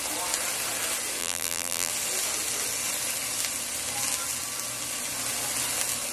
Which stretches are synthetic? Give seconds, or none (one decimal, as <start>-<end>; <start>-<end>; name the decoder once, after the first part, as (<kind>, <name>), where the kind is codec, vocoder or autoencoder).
1.2-1.9 (vocoder, BigVGAN v2)